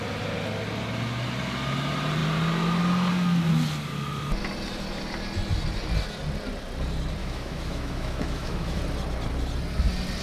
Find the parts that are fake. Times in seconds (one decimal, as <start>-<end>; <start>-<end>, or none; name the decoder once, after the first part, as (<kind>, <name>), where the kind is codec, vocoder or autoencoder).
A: 7.2-8.8 (autoencoder, DAC-VAE)